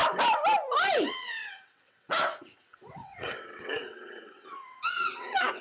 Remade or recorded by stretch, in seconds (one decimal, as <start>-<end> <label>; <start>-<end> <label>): 0.0-0.8 recorded; 0.8-5.6 remade